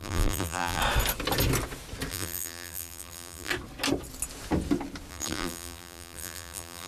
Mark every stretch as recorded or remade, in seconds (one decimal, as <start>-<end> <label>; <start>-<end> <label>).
0.0-0.8 remade; 0.8-2.1 recorded; 2.1-3.5 remade; 3.5-5.1 recorded; 5.1-6.9 remade